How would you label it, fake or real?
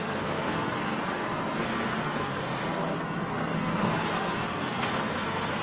fake